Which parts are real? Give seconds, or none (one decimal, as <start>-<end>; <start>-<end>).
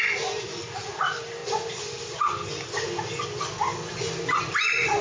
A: 1.4-4.4